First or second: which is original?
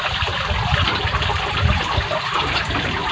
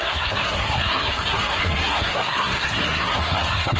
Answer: first